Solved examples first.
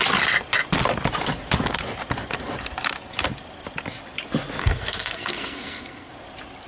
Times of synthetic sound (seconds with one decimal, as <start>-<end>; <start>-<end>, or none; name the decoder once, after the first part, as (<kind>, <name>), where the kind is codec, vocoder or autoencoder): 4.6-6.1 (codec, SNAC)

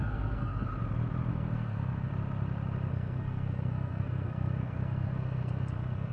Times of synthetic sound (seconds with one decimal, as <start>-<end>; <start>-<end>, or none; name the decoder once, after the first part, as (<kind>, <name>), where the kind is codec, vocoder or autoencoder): 0.0-0.7 (codec, SNAC); 1.3-2.1; 2.9-6.1

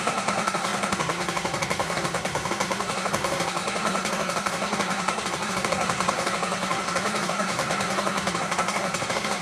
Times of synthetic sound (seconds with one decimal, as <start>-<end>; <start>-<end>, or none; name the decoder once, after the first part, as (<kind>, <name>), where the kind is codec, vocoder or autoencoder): 0.0-9.4 (codec, SNAC)

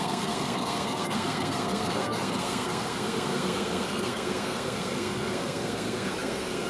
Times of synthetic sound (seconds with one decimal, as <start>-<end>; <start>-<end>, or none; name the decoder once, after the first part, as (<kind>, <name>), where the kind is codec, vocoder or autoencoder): 0.0-6.7 (codec, SNAC)

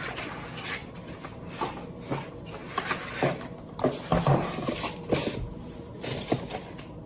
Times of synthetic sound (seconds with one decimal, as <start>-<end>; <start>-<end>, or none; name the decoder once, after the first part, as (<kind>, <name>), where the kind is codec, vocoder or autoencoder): none

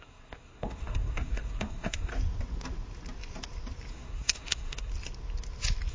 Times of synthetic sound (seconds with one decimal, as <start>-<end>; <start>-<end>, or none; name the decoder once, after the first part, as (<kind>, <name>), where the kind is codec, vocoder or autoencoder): 0.0-2.1 (codec, SNAC); 3.9-4.9